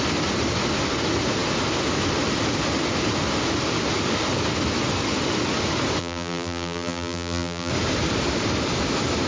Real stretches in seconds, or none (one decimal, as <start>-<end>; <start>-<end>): 0.0-6.0; 7.7-9.3